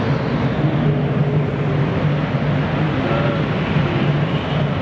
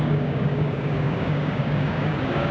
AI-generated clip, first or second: second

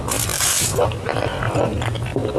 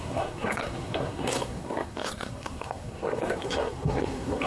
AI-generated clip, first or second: second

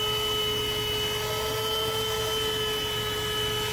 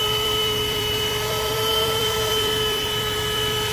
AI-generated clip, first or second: second